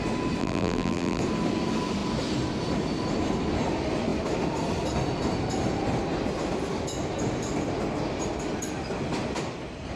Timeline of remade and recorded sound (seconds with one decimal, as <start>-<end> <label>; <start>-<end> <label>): 0.0-0.4 recorded; 0.4-1.2 remade; 1.2-10.0 recorded